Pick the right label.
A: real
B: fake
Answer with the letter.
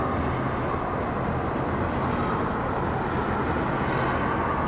A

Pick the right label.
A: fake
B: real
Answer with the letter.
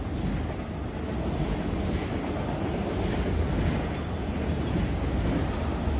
B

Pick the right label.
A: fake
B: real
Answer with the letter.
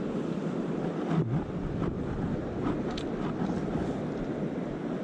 B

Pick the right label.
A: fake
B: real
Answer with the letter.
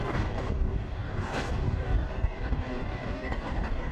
A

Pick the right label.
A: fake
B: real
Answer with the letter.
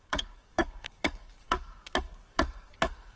A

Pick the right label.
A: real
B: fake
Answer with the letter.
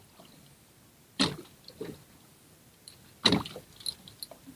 A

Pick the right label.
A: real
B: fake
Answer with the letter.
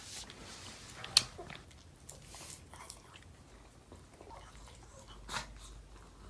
A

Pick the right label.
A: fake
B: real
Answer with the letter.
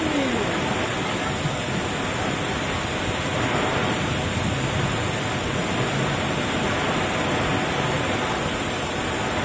B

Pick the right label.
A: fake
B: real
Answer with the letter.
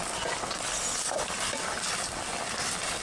B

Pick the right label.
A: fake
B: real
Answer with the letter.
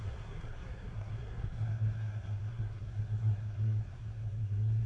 A